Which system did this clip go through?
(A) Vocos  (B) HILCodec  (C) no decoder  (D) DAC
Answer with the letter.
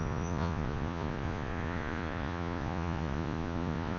A